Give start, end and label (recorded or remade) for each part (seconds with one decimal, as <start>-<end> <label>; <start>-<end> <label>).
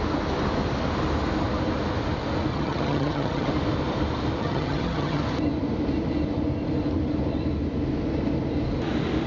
0.0-2.5 recorded; 2.5-3.5 remade; 3.5-4.4 recorded; 4.4-5.2 remade; 5.2-9.3 recorded